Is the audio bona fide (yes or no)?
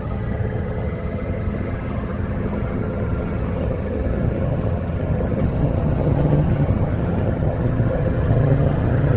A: no